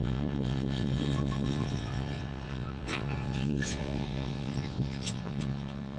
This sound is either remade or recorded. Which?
remade